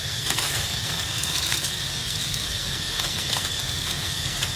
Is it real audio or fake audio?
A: fake